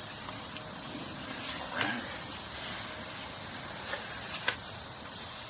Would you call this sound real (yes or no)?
yes